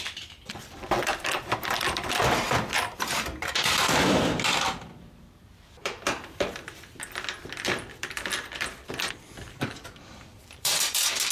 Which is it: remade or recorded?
remade